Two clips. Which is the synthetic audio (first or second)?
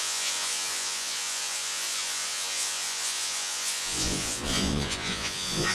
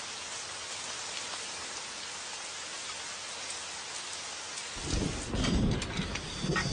first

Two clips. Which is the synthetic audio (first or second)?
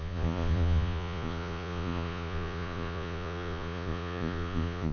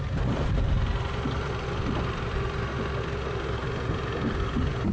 first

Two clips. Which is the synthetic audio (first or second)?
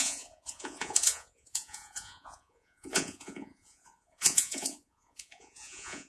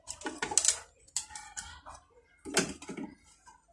first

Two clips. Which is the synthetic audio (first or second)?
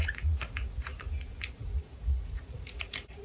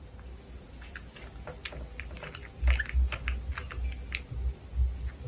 first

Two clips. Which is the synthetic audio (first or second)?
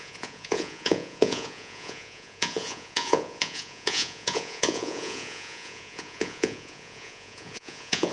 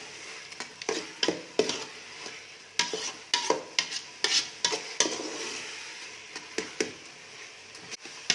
first